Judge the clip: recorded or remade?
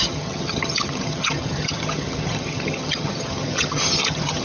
remade